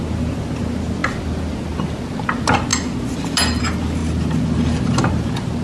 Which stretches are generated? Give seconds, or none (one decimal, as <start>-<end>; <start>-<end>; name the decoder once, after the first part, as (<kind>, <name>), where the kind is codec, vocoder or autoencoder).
none